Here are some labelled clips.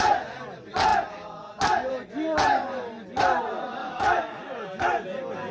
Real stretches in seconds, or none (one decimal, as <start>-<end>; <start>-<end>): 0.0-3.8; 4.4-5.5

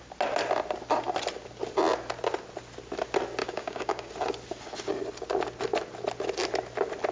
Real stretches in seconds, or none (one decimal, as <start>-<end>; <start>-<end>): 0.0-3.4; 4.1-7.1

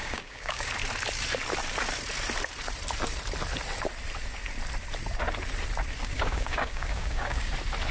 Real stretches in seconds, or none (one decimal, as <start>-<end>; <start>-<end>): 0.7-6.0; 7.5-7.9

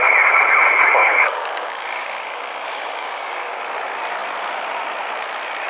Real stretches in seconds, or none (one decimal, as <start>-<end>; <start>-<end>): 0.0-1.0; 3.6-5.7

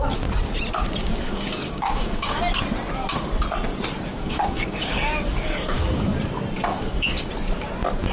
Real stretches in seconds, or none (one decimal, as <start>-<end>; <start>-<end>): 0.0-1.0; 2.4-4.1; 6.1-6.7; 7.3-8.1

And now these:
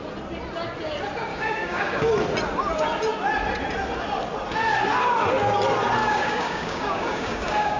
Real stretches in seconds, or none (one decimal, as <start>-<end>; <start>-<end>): 0.0-1.3; 2.1-6.0